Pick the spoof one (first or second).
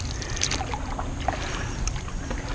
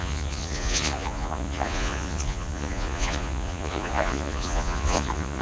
second